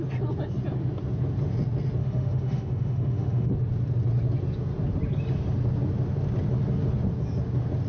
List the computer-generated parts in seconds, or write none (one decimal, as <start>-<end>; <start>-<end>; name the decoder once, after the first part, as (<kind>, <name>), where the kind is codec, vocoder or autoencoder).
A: 2.0-3.5 (autoencoder, DAC-VAE)